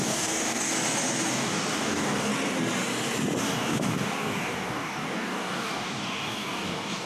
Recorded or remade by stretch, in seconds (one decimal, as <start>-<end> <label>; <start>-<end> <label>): 0.0-0.7 remade; 0.7-1.3 recorded; 1.3-2.3 remade; 2.3-3.4 recorded; 3.4-7.1 remade